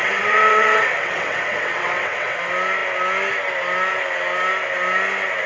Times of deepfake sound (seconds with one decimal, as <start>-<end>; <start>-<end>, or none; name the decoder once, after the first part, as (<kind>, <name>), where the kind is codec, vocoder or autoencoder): 0.0-2.4 (vocoder, WaveNeXt)